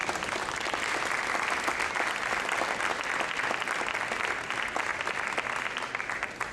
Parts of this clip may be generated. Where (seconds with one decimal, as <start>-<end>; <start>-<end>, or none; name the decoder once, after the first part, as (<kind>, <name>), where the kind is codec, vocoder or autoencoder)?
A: none